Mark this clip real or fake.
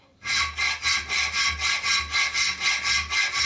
real